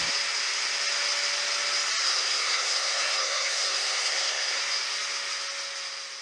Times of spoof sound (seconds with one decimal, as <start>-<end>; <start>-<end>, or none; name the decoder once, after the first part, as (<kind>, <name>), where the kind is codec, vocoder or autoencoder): 2.0-4.6 (codec, SNAC)